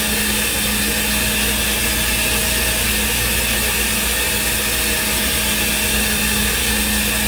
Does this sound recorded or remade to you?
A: recorded